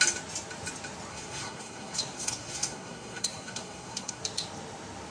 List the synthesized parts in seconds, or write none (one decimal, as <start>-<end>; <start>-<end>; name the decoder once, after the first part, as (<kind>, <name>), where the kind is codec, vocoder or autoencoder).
1.1-4.2 (codec, SNAC)

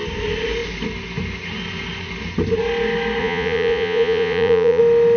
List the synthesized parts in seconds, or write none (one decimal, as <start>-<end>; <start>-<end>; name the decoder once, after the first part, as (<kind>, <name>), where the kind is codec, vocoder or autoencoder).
3.2-4.8 (vocoder, Vocos)

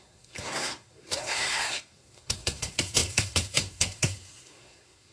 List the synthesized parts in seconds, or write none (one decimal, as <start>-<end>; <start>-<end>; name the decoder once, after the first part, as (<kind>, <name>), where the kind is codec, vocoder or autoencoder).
0.0-5.1 (codec, SNAC)

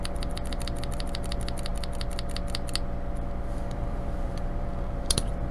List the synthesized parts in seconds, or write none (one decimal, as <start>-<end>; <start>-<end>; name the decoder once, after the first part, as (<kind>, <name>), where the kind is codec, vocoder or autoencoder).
0.0-1.7 (vocoder, BigVGAN v2); 3.5-5.5

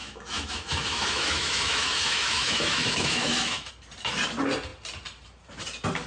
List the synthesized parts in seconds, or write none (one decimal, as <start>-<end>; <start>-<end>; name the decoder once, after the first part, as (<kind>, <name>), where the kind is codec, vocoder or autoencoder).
0.0-3.7 (autoencoder, DAC-VAE)

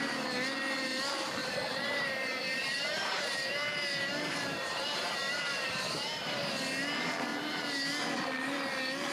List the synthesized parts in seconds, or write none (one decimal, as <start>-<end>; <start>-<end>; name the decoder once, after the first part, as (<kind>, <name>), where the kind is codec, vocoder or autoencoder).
1.4-6.5 (vocoder, BigVGAN v2)

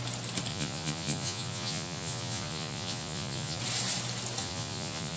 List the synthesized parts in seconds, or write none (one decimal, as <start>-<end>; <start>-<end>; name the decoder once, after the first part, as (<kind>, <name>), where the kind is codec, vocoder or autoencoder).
0.5-3.6 (vocoder, Vocos); 4.4-5.2

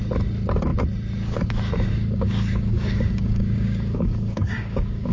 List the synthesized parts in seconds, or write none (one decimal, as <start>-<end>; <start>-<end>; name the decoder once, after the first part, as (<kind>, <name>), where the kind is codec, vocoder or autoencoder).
1.9-5.1 (codec, DAC)